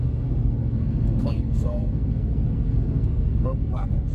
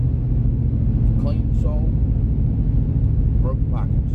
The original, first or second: second